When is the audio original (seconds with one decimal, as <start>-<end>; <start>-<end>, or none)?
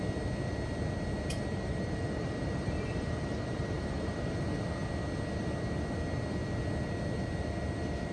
0.0-1.5; 4.3-8.1